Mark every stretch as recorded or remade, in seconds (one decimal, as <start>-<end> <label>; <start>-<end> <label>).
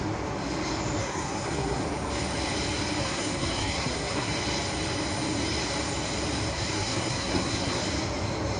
0.0-1.0 recorded; 1.0-1.8 remade; 1.8-3.0 recorded; 3.0-4.3 remade; 4.3-6.5 recorded; 6.5-7.8 remade; 7.8-8.6 recorded